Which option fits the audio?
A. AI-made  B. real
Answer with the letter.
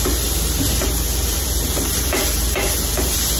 A